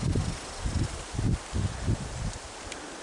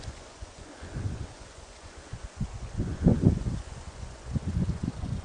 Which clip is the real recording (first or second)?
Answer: first